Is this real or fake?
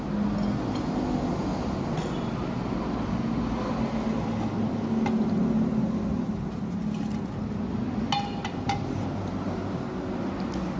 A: real